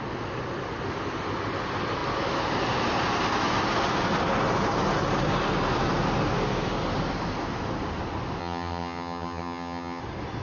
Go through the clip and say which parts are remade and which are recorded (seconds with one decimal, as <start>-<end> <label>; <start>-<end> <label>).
0.0-8.4 recorded; 8.4-10.0 remade; 10.0-10.4 recorded